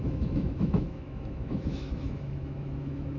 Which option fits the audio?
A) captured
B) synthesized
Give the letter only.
B